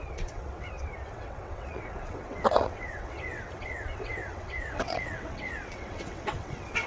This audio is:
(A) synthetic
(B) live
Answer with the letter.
A